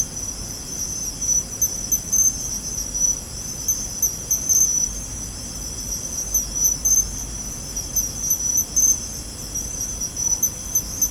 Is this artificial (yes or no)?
no